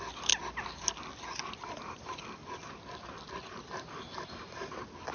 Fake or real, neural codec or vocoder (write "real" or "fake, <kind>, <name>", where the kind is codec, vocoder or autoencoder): real